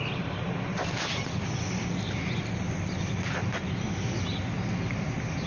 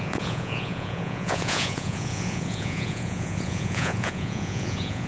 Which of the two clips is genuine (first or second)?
first